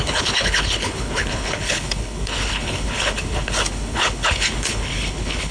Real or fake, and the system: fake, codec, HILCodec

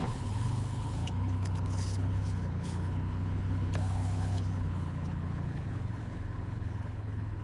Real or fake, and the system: fake, codec, HILCodec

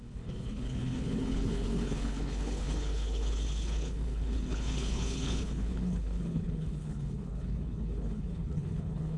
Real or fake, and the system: fake, codec, HILCodec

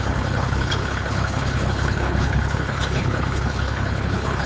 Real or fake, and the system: fake, codec, HILCodec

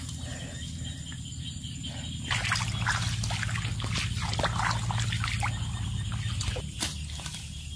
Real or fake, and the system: real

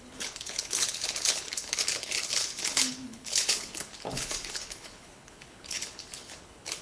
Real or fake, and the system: fake, codec, HILCodec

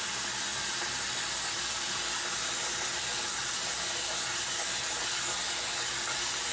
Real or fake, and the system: real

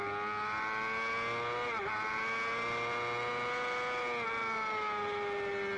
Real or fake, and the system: real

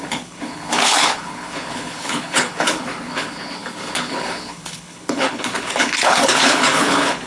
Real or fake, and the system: fake, codec, HILCodec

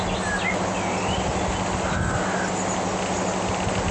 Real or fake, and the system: real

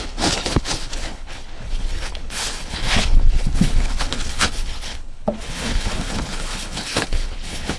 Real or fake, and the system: fake, codec, HILCodec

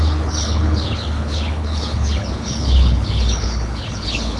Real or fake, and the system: fake, codec, HILCodec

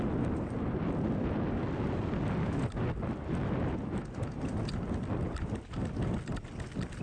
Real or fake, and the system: real